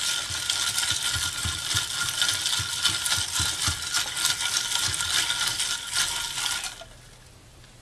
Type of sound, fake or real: real